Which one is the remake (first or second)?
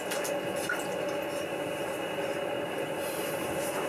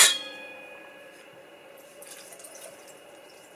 second